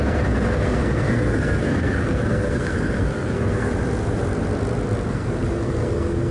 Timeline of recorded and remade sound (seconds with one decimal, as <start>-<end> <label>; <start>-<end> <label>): 0.0-3.7 remade; 3.7-5.1 recorded; 5.1-6.3 remade